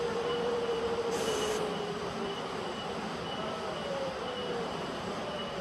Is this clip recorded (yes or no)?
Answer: yes